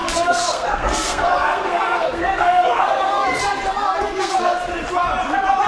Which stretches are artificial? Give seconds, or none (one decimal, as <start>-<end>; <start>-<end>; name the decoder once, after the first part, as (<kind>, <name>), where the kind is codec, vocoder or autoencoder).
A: 0.0-3.4 (codec, SNAC); 4.0-4.6